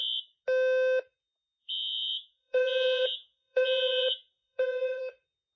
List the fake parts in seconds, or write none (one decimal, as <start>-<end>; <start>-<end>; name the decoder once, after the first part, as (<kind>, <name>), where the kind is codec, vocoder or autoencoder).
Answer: 1.6-5.0 (vocoder, Vocos)